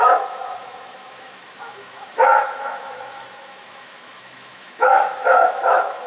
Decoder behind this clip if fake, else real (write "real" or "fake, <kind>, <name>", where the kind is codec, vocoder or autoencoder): fake, autoencoder, DAC-VAE